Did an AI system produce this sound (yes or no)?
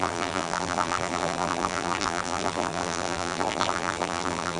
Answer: yes